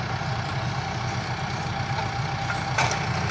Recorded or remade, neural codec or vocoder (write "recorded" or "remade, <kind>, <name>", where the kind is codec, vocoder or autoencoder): recorded